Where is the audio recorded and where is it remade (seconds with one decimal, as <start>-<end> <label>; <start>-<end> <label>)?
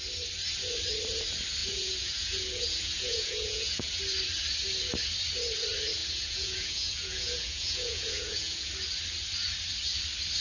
0.0-1.6 recorded; 1.6-4.0 remade; 4.0-6.0 recorded; 6.0-8.7 remade; 8.7-10.4 recorded